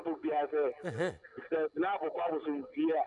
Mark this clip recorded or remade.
recorded